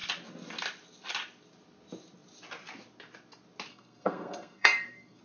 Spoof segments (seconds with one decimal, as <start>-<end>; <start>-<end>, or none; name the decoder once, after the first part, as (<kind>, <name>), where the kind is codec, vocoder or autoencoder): 3.7-5.2 (codec, SNAC)